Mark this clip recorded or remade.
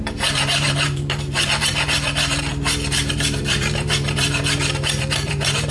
remade